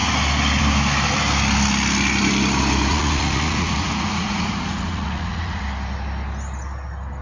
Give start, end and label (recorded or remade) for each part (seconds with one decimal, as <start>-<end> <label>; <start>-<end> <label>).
0.0-2.9 recorded; 2.9-5.6 remade; 5.6-7.2 recorded